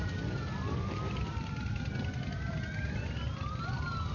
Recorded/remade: recorded